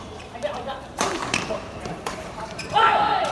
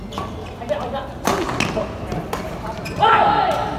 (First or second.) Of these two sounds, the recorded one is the second